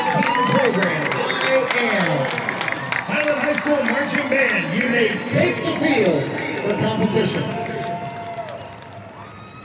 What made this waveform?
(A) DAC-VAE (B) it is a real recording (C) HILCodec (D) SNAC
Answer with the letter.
B